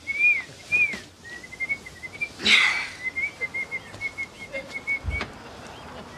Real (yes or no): yes